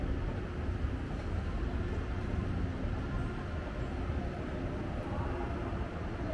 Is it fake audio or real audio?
real